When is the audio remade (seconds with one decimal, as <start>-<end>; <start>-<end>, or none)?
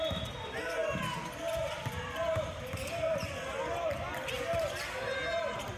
none